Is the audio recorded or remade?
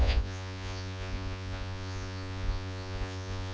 remade